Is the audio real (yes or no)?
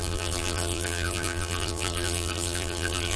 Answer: no